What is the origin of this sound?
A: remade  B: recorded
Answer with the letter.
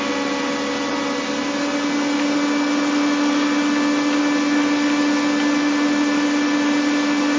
B